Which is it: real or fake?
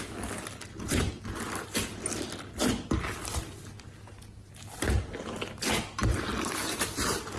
real